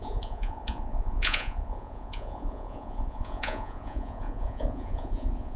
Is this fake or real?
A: fake